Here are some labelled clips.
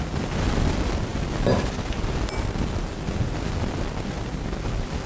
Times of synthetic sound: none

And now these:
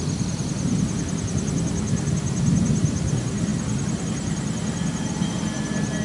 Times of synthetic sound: none

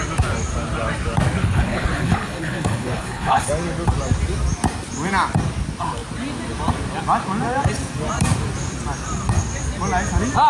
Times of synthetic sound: 1.4-3.5 (codec, HILCodec)

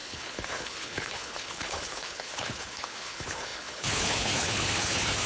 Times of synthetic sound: 0.0-5.3 (codec, HILCodec)